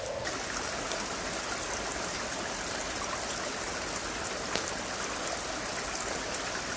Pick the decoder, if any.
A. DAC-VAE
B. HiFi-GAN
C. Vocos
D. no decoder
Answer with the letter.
D